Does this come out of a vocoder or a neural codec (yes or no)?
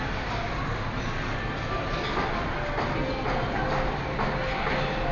no